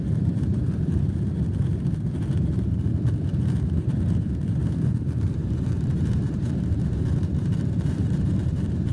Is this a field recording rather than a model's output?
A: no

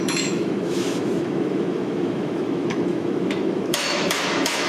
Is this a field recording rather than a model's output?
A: no